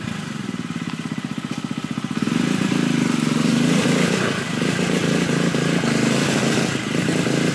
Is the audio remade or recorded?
recorded